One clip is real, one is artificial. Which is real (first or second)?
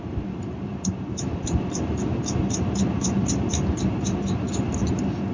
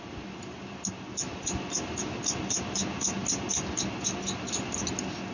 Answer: second